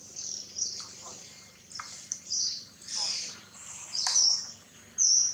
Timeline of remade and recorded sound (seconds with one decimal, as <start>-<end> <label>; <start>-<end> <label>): 0.0-1.2 recorded; 1.2-4.2 remade; 4.2-5.3 recorded